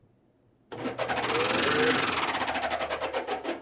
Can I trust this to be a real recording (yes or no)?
yes